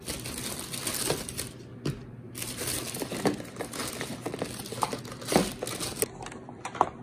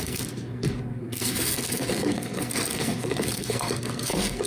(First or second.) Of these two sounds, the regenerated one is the second